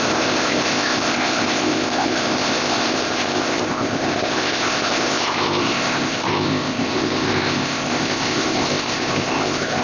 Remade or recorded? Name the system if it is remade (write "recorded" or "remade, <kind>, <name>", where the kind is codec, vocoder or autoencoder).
remade, codec, ZipCodec